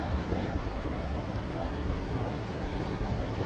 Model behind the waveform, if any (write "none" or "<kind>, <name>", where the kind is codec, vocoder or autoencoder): codec, SNAC